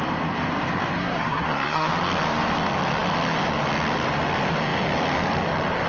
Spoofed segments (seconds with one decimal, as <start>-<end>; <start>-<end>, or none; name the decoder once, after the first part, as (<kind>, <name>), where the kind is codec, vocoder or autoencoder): 1.0-1.9 (codec, SNAC)